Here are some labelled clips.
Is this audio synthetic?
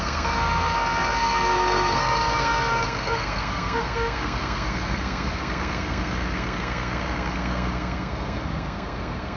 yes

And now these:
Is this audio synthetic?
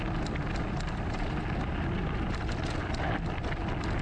no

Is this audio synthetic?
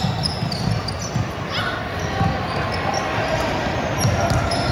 no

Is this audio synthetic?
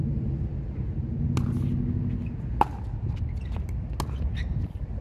no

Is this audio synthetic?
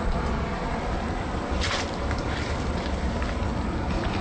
no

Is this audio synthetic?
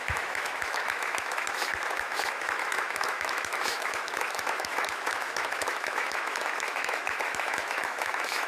yes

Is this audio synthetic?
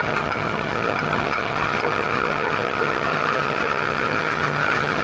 yes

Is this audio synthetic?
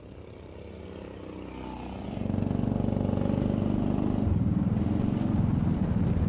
no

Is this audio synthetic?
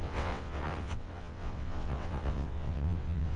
yes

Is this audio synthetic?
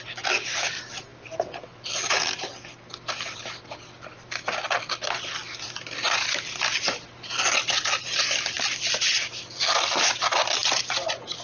no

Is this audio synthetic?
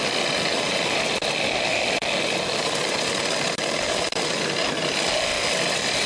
no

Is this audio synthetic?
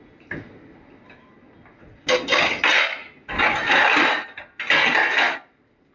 no